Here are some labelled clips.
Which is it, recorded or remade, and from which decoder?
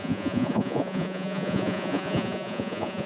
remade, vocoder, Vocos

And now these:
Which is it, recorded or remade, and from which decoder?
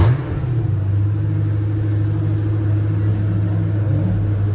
recorded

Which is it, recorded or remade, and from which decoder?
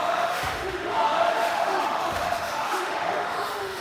remade, autoencoder, DAC-VAE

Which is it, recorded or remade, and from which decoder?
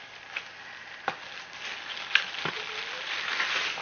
recorded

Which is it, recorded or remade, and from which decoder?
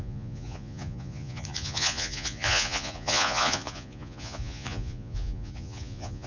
remade, vocoder, Vocos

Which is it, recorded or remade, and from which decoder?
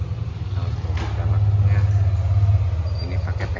recorded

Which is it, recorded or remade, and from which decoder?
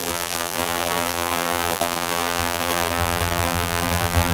remade, vocoder, BigVGAN v2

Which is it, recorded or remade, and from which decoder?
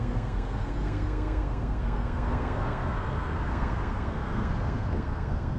remade, codec, SNAC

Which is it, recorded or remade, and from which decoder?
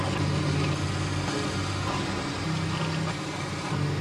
recorded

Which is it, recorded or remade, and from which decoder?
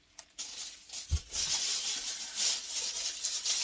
recorded